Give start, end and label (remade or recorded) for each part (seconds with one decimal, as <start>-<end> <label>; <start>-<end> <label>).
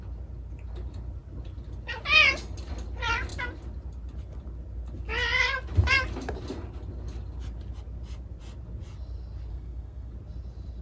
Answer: 0.0-9.5 recorded; 9.5-10.1 remade; 10.1-10.8 recorded